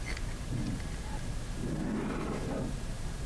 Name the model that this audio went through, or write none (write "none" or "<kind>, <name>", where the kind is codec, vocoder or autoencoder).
none